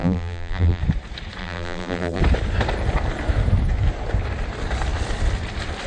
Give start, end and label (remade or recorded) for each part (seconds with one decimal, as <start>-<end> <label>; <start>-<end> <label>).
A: 0.0-0.8 remade; 0.8-1.4 recorded; 1.4-2.2 remade; 2.2-5.9 recorded